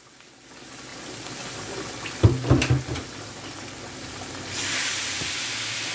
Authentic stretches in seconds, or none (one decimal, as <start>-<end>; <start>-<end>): 0.0-0.9; 2.2-5.9